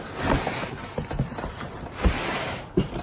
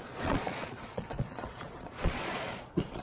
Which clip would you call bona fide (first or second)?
first